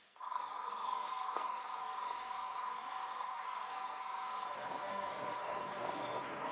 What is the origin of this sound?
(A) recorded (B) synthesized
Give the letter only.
B